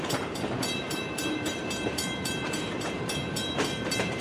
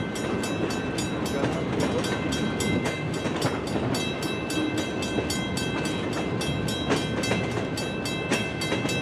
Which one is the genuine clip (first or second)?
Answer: second